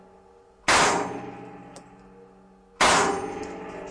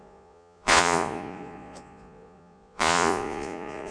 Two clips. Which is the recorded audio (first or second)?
first